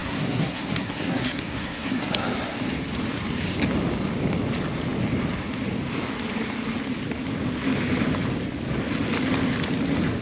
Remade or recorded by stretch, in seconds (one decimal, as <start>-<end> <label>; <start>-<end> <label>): 0.0-2.1 remade; 2.1-10.2 recorded